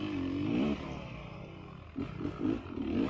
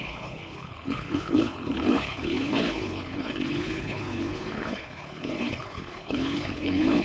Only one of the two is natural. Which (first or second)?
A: first